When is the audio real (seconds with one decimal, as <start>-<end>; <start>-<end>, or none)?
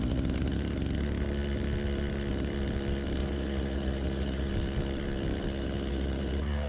0.0-3.2; 4.5-5.9